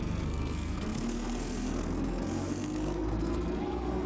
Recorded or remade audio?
remade